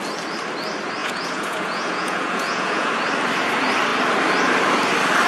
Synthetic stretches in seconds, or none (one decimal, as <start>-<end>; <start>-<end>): 1.0-2.9